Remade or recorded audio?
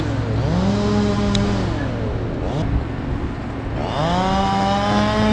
recorded